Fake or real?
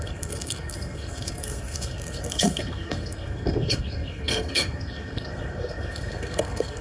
fake